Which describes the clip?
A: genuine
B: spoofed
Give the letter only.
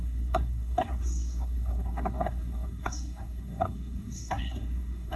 B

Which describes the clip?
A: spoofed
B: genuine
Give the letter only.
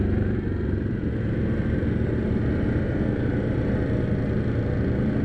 B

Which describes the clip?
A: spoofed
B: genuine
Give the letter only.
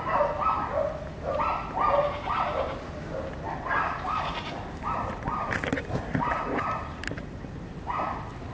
B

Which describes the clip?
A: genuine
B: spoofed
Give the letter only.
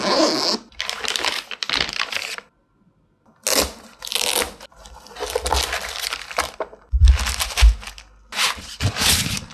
A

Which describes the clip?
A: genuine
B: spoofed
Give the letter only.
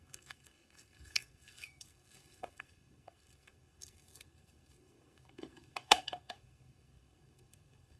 B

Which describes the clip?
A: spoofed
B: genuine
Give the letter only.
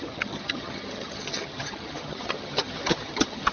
A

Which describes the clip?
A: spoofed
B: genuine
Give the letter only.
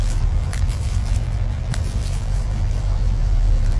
A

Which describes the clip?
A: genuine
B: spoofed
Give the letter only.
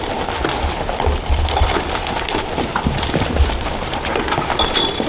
A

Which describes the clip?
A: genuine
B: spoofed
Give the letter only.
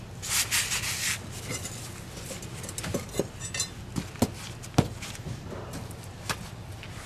A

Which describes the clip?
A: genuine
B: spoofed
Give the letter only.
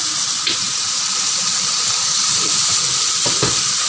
B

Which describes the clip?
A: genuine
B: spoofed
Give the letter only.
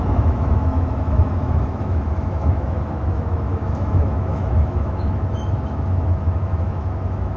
B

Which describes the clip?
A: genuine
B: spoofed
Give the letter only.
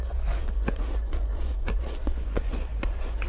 B